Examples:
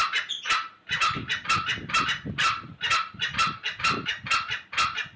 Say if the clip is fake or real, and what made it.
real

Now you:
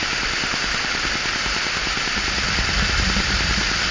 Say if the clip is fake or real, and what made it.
real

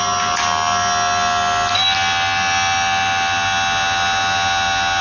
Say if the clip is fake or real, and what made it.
real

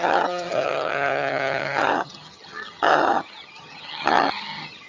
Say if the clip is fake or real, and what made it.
fake, vocoder, HiFi-GAN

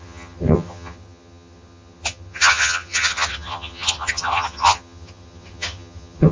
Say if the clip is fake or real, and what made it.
fake, vocoder, HiFi-GAN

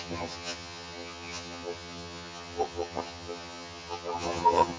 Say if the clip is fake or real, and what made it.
fake, vocoder, HiFi-GAN